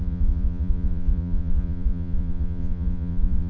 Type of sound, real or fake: fake